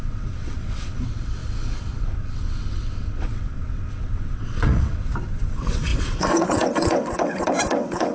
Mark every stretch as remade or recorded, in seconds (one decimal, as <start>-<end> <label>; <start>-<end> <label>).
0.0-8.1 remade